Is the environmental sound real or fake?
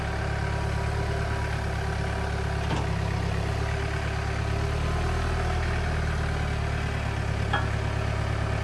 real